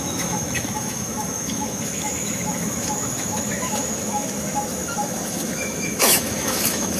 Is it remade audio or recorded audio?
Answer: remade